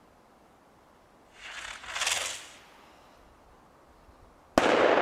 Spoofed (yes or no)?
no